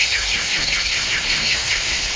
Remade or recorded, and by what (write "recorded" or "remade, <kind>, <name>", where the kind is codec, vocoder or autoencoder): remade, codec, SNAC